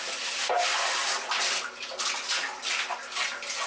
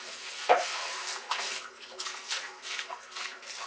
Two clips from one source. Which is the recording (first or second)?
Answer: first